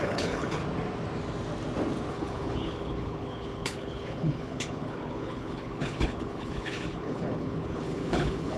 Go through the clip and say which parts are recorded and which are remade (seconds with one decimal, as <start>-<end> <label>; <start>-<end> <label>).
0.0-0.6 remade; 0.6-2.1 recorded; 2.1-8.6 remade

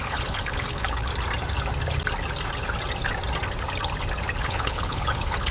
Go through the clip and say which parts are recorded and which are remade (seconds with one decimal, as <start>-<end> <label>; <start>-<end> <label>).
0.0-1.1 remade; 1.1-4.4 recorded; 4.4-5.5 remade

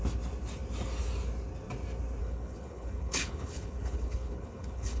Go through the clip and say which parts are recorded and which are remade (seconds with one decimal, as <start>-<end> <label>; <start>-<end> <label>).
0.0-2.2 recorded; 2.2-5.0 remade

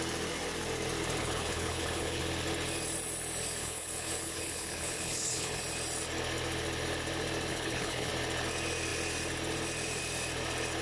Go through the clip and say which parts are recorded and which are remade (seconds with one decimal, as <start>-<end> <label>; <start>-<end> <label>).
0.0-1.2 recorded; 1.2-2.2 remade; 2.2-3.6 recorded; 3.6-5.6 remade; 5.6-7.5 recorded; 7.5-8.1 remade; 8.1-10.8 recorded

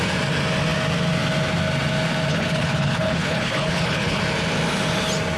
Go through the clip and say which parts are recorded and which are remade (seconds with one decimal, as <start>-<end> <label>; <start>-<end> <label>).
0.0-2.3 recorded; 2.3-4.2 remade; 4.2-5.4 recorded

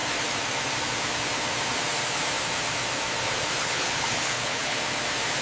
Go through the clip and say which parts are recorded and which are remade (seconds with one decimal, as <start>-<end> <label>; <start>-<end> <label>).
0.0-3.6 recorded; 3.6-4.8 remade; 4.8-5.4 recorded